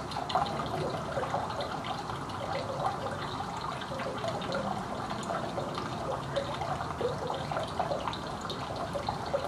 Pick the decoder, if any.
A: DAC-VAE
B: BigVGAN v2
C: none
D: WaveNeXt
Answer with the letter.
C